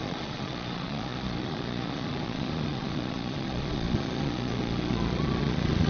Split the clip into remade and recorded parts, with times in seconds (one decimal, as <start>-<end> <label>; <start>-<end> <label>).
0.0-5.9 remade